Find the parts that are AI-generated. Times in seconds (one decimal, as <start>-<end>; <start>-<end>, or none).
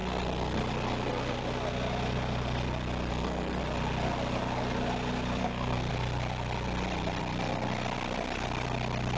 0.0-0.6; 3.1-3.6; 5.4-5.9